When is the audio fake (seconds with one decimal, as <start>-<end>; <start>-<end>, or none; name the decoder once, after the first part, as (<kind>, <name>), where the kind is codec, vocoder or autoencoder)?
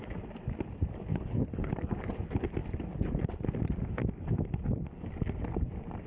1.1-1.7 (codec, HILCodec)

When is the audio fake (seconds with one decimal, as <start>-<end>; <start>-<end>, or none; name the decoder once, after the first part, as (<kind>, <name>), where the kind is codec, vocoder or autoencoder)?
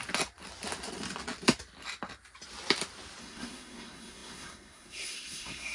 3.2-5.7 (codec, SNAC)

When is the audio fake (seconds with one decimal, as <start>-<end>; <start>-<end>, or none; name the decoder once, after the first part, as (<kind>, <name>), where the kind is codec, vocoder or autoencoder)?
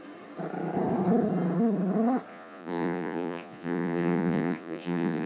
2.3-5.3 (vocoder, Vocos)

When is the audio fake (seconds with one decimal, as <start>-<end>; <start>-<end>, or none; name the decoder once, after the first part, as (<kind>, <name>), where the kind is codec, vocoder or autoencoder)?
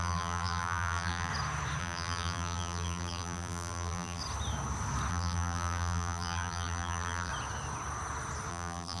0.0-1.3 (vocoder, BigVGAN v2); 1.8-4.2; 5.1-7.3; 8.5-9.0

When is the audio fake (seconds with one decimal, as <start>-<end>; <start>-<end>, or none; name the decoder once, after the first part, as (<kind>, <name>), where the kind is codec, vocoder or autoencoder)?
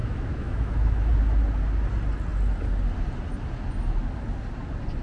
0.0-1.1 (autoencoder, DAC-VAE)